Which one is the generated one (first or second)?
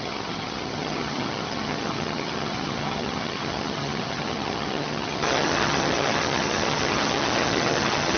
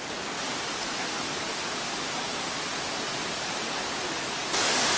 first